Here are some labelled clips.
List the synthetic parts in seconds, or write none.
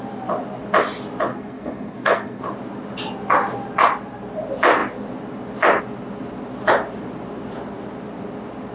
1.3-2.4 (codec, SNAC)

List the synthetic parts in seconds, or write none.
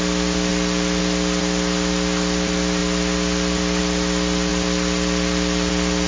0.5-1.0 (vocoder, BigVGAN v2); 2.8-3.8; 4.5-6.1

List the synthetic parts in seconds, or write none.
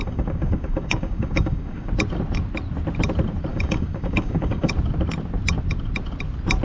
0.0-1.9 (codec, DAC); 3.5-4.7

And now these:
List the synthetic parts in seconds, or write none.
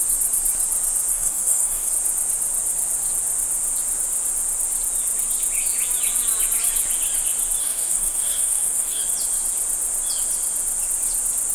1.1-1.9 (codec, DAC); 7.6-9.0